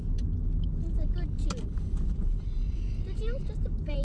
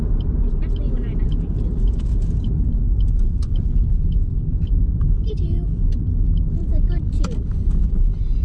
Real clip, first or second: first